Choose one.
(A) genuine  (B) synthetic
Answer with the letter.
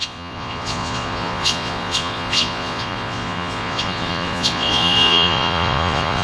B